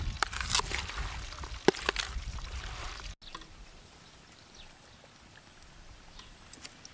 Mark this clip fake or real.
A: real